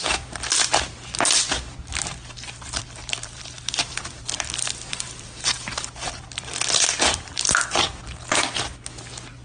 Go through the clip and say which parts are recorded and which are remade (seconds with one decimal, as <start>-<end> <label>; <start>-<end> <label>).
0.0-2.8 recorded; 2.8-8.0 remade; 8.0-9.4 recorded